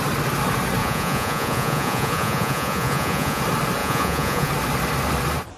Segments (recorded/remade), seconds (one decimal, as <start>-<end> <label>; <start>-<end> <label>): 0.0-0.8 recorded; 0.8-3.4 remade; 3.4-3.8 recorded; 3.8-4.5 remade; 4.5-5.6 recorded